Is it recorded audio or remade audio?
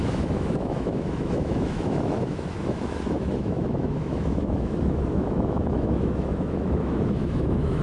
remade